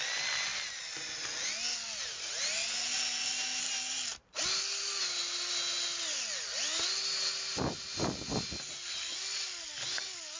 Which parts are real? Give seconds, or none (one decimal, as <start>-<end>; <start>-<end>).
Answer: 0.0-10.4